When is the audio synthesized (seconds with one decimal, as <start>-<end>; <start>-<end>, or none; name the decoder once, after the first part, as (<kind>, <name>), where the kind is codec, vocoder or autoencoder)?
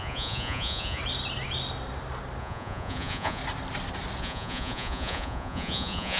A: 0.0-1.0 (vocoder, Vocos); 2.4-3.4; 4.2-6.2